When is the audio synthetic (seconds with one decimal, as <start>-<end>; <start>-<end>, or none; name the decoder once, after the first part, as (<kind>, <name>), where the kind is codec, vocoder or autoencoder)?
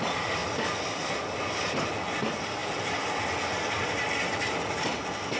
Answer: 0.0-0.4 (vocoder, BigVGAN v2); 1.4-5.4